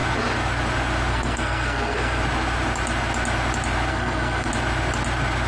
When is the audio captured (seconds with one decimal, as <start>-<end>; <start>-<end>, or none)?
0.0-1.1; 2.2-3.9; 4.5-5.5